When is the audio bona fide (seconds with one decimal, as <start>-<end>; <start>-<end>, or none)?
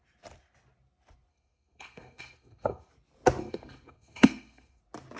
0.0-1.3; 2.9-3.4; 4.8-5.2